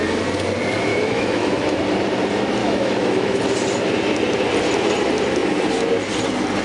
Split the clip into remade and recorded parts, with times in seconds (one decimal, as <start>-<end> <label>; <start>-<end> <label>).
0.0-0.9 recorded; 0.9-1.8 remade; 1.8-2.6 recorded; 2.6-3.4 remade; 3.4-6.6 recorded